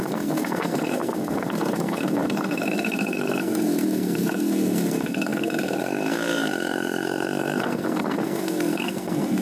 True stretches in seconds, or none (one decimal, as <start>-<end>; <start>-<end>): none